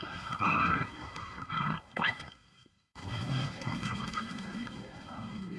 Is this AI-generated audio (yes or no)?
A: yes